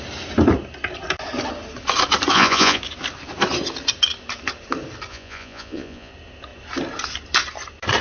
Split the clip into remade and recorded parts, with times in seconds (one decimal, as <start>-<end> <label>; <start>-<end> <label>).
0.0-2.3 recorded; 2.3-2.8 remade; 2.8-5.1 recorded; 5.1-6.1 remade; 6.1-8.0 recorded